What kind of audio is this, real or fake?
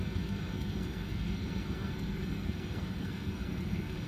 fake